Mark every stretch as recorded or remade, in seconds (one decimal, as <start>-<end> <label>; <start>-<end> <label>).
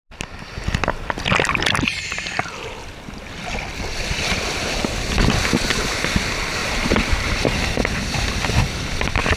0.0-6.6 recorded; 6.6-7.9 remade; 7.9-9.4 recorded